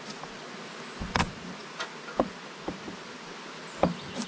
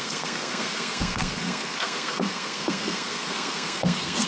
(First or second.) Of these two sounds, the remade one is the second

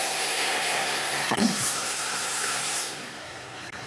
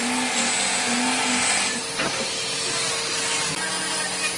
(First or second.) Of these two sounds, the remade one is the first